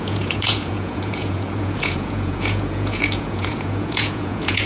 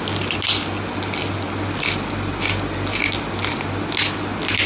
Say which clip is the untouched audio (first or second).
second